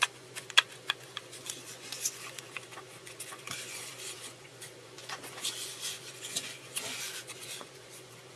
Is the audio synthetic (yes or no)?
yes